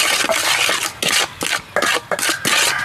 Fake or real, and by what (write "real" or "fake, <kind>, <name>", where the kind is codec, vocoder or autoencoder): real